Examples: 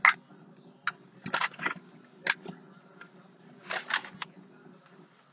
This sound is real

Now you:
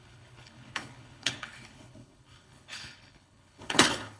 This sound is fake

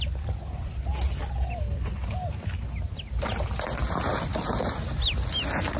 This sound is real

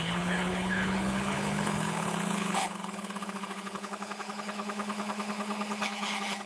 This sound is fake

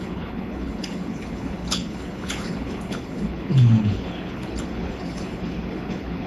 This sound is fake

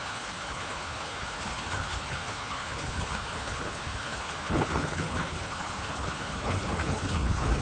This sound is fake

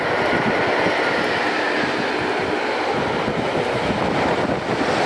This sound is real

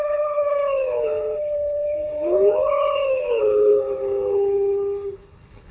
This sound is fake